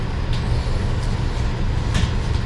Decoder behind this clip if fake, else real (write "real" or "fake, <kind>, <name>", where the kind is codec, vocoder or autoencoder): real